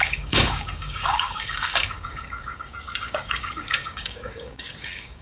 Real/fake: fake